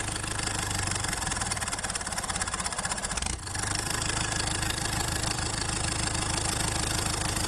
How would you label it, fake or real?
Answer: fake